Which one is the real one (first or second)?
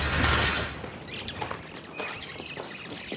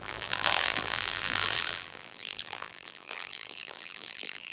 first